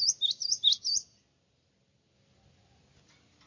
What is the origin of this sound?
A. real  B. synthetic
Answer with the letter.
A